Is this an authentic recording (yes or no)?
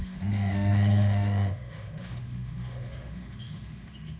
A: no